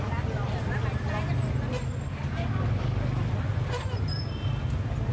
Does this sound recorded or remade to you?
recorded